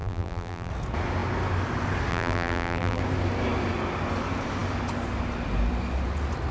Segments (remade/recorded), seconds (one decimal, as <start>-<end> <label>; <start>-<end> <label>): 0.0-0.7 remade; 0.7-2.1 recorded; 2.1-3.0 remade; 3.0-6.5 recorded